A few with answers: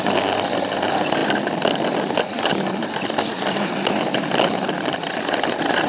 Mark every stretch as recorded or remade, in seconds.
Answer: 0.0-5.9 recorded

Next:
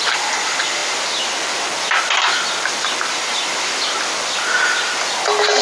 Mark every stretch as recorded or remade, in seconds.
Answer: 0.0-5.6 recorded

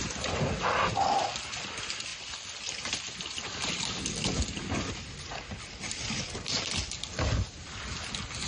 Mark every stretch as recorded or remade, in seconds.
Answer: 0.0-8.5 recorded

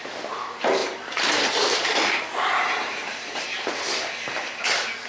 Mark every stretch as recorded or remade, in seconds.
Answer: 0.0-0.8 recorded; 0.8-3.9 remade; 3.9-5.1 recorded

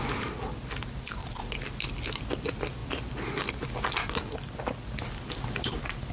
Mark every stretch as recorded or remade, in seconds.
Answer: 0.0-6.1 recorded

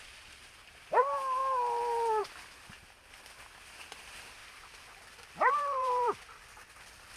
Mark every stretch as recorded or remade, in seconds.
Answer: 0.0-4.4 recorded; 4.4-6.7 remade; 6.7-7.2 recorded

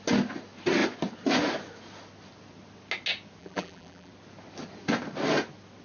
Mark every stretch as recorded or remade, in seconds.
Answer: 0.0-3.4 recorded; 3.4-4.1 remade; 4.1-5.8 recorded